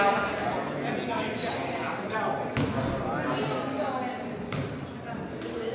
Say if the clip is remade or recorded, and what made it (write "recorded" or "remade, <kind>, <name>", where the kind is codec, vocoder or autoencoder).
recorded